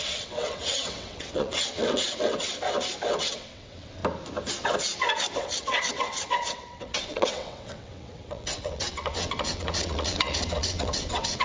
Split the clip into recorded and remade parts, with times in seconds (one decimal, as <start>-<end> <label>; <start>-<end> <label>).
0.0-2.5 remade; 2.5-3.1 recorded; 3.1-4.0 remade; 4.0-5.4 recorded; 5.4-11.4 remade